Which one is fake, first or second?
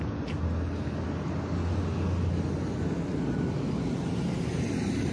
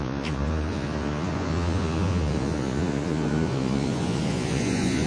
second